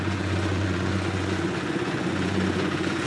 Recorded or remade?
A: remade